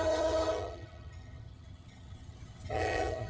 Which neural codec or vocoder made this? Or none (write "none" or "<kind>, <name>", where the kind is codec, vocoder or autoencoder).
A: vocoder, HiFi-GAN